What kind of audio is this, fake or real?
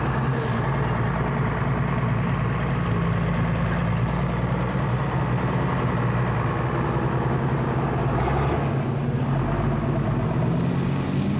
real